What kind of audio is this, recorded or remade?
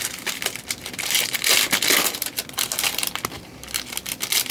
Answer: recorded